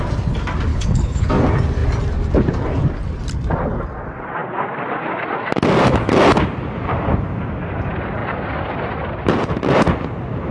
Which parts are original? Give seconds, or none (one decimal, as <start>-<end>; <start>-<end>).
0.0-0.7; 1.3-10.5